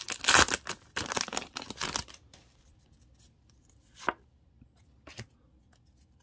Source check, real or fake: real